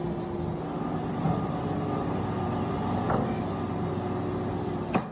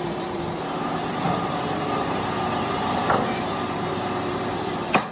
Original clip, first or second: first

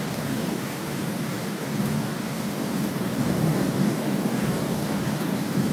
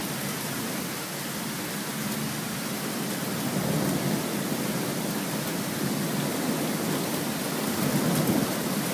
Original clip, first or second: second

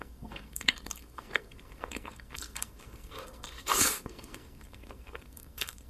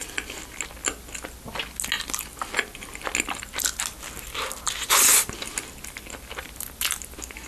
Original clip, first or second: second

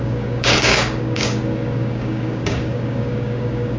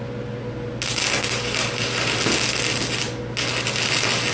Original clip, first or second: second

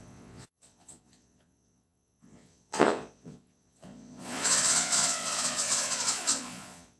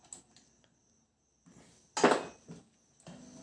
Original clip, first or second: second